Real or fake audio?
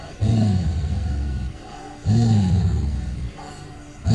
fake